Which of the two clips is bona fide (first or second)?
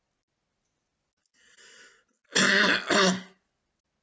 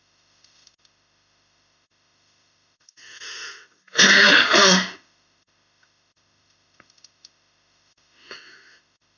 first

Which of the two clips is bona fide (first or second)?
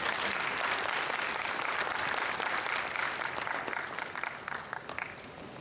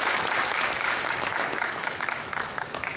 first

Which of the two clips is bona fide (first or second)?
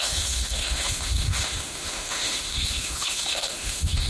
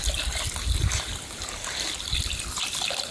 second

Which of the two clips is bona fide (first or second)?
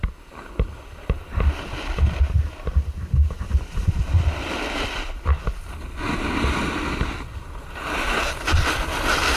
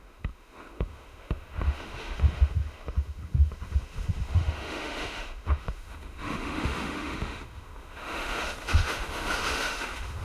first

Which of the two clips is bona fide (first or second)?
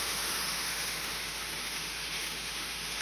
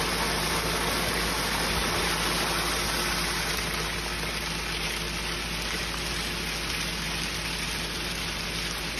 second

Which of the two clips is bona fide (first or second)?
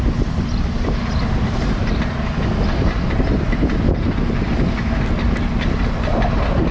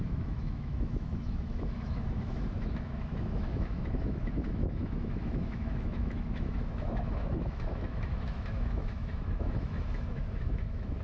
first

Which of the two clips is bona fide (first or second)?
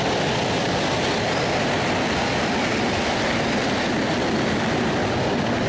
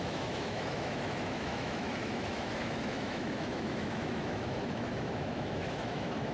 first